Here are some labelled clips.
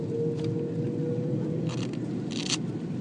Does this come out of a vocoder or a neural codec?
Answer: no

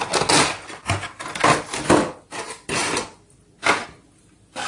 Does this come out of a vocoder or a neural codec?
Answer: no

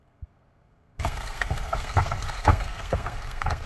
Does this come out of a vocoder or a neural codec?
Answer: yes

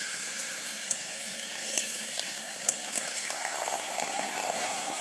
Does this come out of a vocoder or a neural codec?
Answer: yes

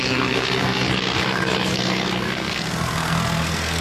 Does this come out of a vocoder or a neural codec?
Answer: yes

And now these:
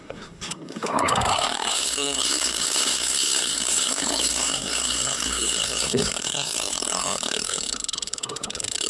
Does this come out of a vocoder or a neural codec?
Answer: yes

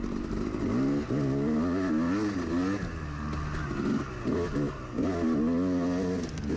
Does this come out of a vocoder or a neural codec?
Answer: no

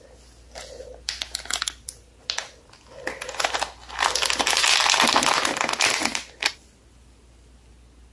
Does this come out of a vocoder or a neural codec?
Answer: no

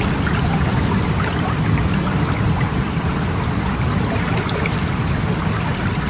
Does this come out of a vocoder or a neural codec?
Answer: no